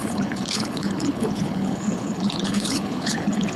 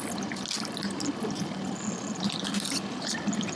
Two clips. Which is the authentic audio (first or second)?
second